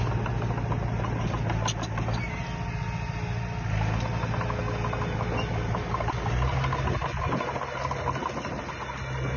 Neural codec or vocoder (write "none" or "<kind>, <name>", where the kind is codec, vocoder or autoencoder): none